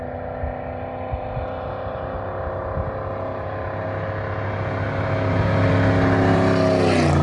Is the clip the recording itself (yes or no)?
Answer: yes